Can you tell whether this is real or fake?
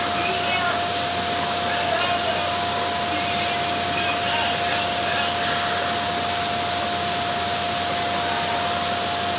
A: real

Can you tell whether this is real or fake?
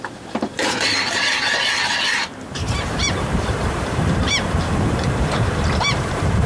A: fake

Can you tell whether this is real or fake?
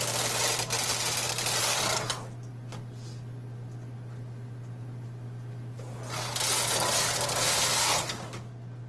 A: real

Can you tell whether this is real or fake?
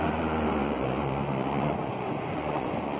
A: fake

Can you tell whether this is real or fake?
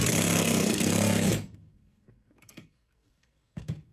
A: fake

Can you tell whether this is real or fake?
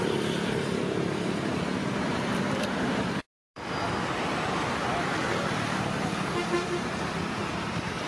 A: fake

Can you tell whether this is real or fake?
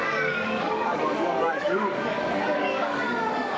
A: fake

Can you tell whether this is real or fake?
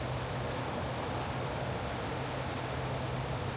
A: real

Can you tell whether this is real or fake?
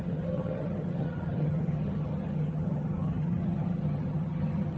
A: fake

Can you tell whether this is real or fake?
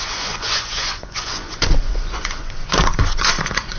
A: fake